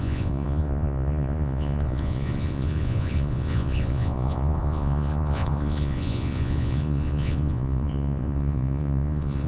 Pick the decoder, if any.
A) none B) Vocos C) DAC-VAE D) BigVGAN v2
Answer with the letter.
B